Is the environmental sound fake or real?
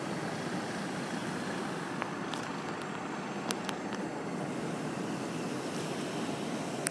real